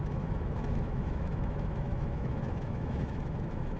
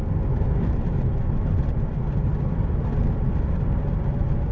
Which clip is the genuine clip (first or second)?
second